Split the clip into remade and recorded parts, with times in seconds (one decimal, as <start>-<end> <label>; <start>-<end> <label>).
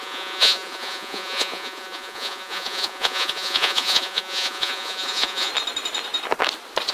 0.0-5.5 remade; 5.5-6.9 recorded